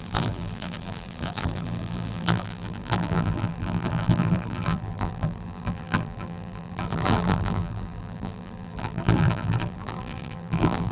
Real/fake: fake